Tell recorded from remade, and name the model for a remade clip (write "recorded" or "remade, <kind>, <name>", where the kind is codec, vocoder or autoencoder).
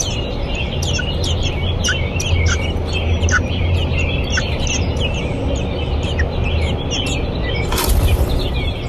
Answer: recorded